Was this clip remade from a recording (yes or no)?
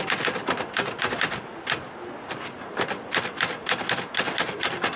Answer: no